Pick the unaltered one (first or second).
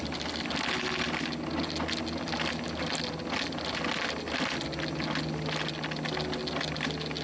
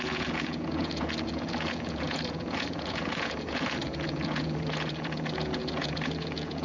first